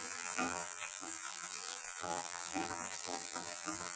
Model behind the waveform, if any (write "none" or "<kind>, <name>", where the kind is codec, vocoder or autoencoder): vocoder, BigVGAN v2